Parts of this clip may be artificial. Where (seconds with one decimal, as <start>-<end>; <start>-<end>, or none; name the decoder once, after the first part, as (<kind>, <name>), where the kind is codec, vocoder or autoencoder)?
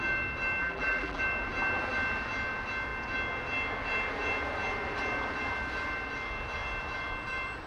0.6-1.2 (vocoder, BigVGAN v2)